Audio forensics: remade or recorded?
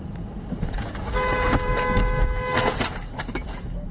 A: remade